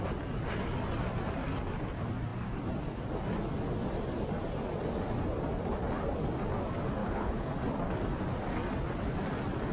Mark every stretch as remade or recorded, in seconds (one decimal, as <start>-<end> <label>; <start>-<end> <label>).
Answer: 0.0-7.0 recorded; 7.0-7.5 remade; 7.5-9.7 recorded